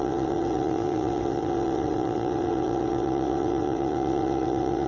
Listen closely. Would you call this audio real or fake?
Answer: fake